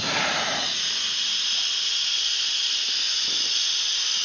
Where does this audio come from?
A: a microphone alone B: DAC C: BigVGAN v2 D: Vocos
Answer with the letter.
A